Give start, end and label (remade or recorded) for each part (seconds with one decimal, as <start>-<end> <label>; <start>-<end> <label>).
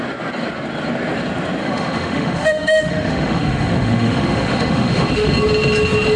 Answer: 0.0-1.6 recorded; 1.6-5.3 remade; 5.3-6.2 recorded